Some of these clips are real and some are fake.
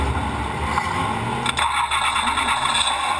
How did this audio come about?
real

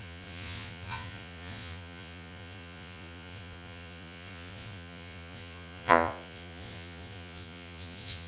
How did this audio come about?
fake